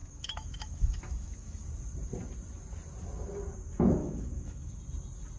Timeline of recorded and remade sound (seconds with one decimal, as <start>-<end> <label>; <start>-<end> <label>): 0.0-1.6 remade; 1.6-4.0 recorded; 4.0-4.8 remade; 4.8-5.4 recorded